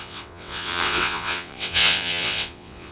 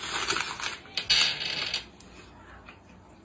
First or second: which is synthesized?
first